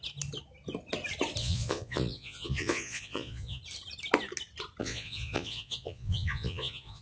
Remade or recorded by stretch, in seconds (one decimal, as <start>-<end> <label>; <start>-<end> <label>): 0.0-1.4 recorded; 1.4-3.6 remade; 3.6-4.8 recorded; 4.8-7.0 remade